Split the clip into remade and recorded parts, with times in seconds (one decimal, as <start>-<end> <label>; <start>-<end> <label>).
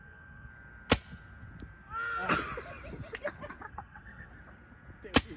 0.0-0.5 remade; 0.5-3.7 recorded; 3.7-4.3 remade; 4.3-5.4 recorded